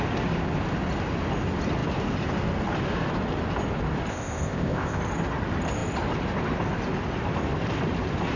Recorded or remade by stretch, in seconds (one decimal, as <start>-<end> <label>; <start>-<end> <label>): 0.0-4.1 recorded; 4.1-5.0 remade; 5.0-8.4 recorded